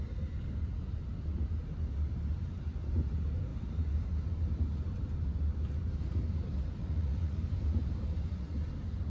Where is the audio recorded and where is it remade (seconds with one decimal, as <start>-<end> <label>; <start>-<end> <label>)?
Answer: 0.0-6.8 recorded; 6.8-7.4 remade; 7.4-9.1 recorded